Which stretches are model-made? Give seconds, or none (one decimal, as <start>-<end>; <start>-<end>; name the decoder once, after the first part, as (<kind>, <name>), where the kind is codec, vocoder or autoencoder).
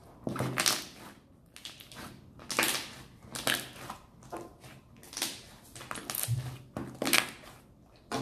none